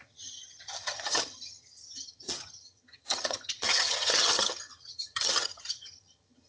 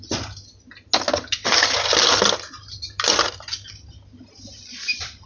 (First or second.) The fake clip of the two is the first